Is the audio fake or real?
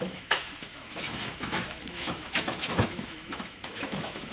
fake